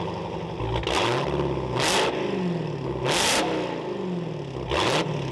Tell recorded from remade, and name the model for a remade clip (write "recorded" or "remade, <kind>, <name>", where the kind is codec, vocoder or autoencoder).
recorded